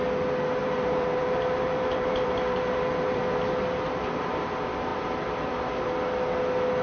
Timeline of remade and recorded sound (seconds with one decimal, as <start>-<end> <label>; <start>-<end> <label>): 0.0-0.6 recorded; 0.6-4.5 remade; 4.5-6.8 recorded